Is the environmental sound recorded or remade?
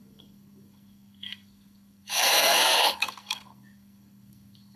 remade